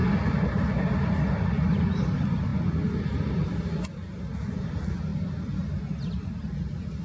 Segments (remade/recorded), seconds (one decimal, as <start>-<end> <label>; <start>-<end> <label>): 0.0-7.0 recorded